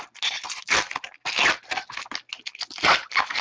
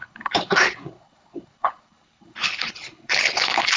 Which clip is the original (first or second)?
first